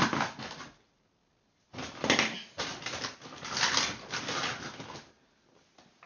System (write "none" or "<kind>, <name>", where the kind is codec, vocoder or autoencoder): none